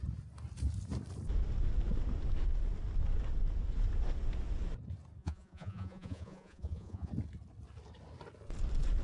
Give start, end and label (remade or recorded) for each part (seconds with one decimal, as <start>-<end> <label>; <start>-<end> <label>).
0.0-5.2 recorded; 5.2-7.1 remade; 7.1-9.0 recorded